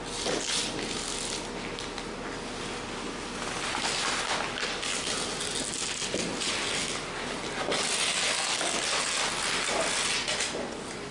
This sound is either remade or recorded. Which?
recorded